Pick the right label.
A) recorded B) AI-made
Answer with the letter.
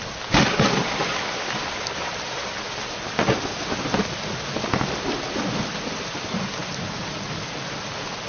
A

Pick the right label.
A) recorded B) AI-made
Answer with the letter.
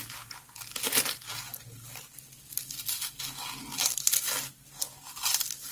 A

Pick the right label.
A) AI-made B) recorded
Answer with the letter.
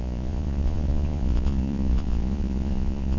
A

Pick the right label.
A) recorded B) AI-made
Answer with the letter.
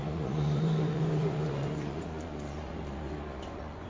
B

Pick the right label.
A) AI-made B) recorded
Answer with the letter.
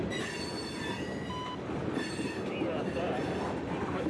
B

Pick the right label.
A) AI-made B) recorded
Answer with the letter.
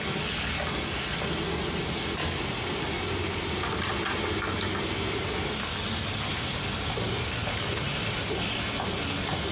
B